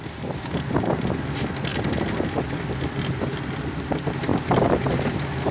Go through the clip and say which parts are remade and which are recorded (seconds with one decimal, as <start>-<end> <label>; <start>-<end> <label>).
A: 0.0-5.5 recorded